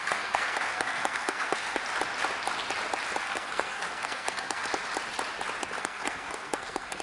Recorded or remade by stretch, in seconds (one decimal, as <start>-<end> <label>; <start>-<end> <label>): 0.0-1.8 remade; 1.8-3.2 recorded; 3.2-4.7 remade; 4.7-5.8 recorded; 5.8-7.0 remade